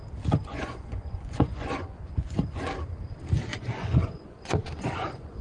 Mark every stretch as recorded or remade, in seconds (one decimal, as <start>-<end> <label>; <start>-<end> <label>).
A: 0.0-0.5 recorded; 0.5-2.6 remade; 2.6-3.5 recorded; 3.5-5.4 remade